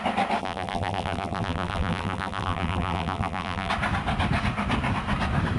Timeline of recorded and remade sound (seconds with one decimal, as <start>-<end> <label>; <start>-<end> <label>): 0.0-0.4 recorded; 0.4-3.7 remade; 3.7-5.6 recorded